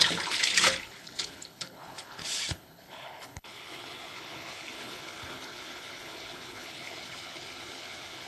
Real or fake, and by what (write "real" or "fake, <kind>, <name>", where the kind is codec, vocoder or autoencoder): fake, codec, HILCodec